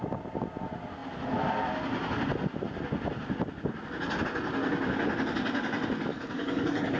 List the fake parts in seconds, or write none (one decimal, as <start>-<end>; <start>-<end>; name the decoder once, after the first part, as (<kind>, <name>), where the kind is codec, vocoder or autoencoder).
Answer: 6.1-7.0 (codec, DAC)